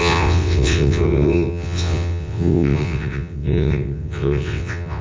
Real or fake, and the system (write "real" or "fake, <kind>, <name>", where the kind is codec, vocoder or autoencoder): fake, vocoder, WaveNeXt